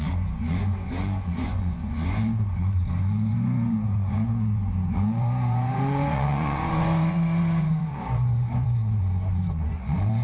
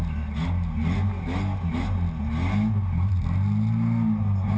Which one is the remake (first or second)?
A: first